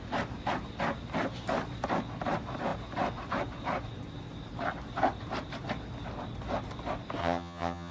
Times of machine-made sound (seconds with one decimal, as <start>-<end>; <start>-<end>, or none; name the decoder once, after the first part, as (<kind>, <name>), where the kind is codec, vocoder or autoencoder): 7.2-7.9 (vocoder, HiFi-GAN)